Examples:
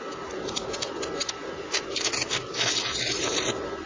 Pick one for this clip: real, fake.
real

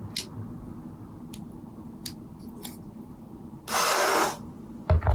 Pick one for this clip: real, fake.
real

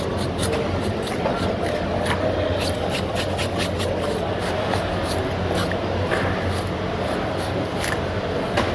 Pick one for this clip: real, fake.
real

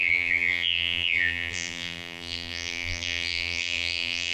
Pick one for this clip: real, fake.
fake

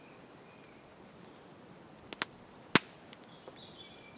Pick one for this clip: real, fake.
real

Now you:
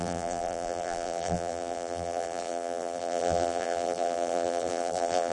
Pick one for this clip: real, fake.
fake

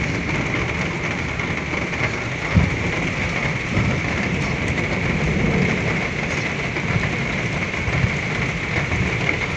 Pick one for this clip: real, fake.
real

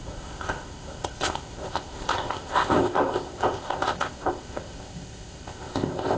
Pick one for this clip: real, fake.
fake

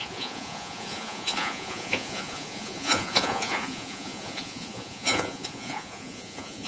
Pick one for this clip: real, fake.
fake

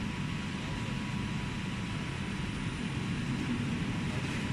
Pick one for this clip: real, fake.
real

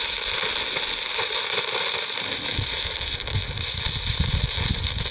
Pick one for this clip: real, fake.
real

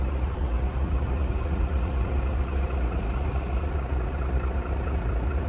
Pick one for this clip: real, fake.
fake